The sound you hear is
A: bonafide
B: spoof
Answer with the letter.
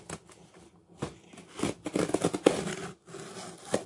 A